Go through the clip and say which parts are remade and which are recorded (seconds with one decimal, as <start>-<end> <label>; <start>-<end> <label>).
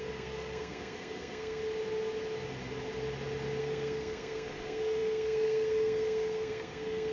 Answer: 0.0-1.6 remade; 1.6-3.6 recorded; 3.6-7.1 remade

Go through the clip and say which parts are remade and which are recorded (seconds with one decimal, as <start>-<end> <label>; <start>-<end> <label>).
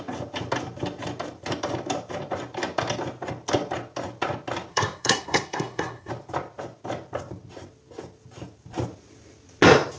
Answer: 0.0-4.7 recorded; 4.7-6.1 remade; 6.1-10.0 recorded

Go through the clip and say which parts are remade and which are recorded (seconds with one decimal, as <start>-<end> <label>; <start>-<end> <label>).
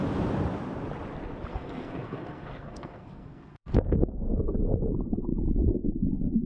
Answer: 0.0-1.5 recorded; 1.5-4.5 remade; 4.5-6.5 recorded